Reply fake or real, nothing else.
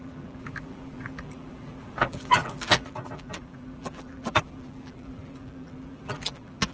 fake